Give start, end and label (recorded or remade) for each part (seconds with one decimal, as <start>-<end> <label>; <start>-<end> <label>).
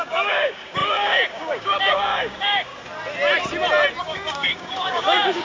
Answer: 0.0-2.7 remade; 2.7-4.0 recorded; 4.0-5.4 remade